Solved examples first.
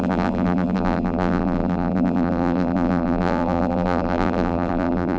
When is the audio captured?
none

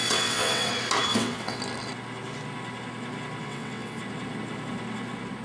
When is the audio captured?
0.7-1.1; 1.6-3.4; 4.0-5.4